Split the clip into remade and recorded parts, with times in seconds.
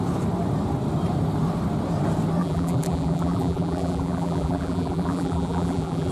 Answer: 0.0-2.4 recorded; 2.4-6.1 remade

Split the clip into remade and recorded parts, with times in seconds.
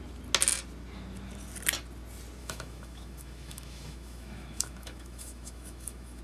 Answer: 0.0-2.4 recorded; 2.4-6.2 remade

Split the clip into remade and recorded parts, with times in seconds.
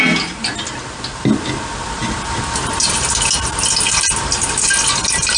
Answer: 0.0-5.4 recorded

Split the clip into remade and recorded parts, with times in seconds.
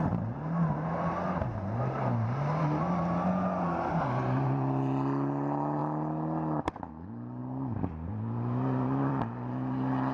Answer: 0.0-10.1 recorded